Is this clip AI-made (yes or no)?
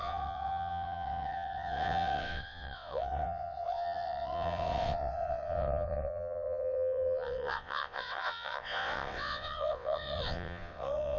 yes